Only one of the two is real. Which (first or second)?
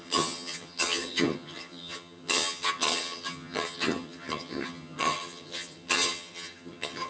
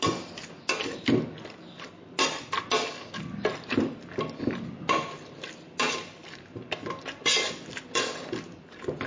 second